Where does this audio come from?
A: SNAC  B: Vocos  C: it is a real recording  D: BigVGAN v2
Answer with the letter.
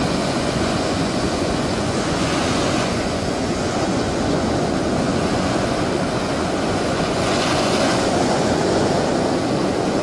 B